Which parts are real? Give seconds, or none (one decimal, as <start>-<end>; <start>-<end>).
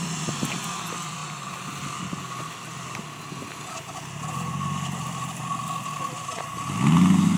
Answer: 0.0-7.4